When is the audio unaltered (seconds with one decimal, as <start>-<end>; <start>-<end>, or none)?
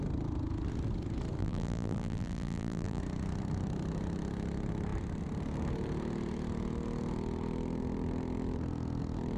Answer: 0.0-1.4; 3.0-9.4